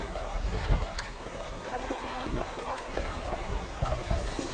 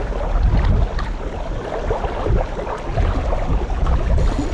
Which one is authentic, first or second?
second